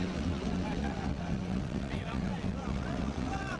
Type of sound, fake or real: fake